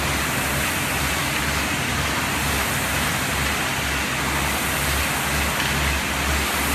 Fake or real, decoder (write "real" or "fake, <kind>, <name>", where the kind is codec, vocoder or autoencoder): real